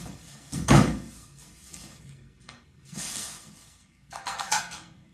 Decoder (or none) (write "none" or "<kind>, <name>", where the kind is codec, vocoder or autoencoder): codec, SNAC